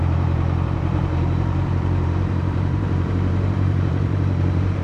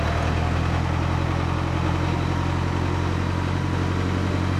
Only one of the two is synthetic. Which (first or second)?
first